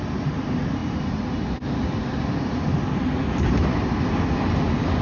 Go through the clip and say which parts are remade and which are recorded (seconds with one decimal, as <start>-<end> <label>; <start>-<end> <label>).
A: 0.0-5.0 recorded